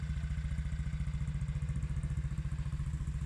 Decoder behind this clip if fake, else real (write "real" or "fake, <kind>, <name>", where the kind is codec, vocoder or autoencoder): real